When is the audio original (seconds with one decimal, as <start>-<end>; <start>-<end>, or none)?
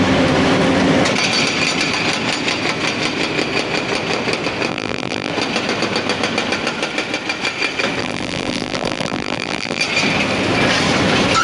0.0-4.7; 5.3-8.0; 9.8-11.4